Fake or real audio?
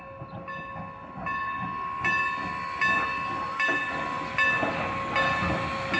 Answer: real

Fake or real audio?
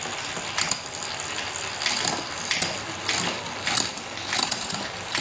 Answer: real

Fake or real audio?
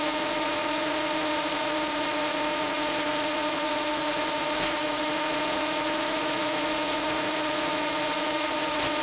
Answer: fake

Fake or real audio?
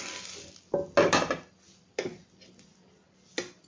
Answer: real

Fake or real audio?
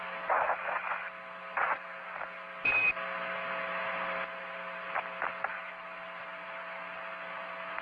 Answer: real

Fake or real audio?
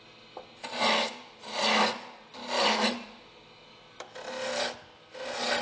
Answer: real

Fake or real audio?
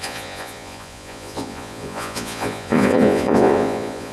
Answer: fake